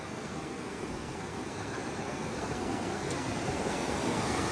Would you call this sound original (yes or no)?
no